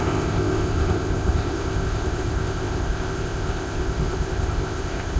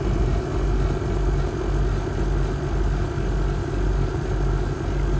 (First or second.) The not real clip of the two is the first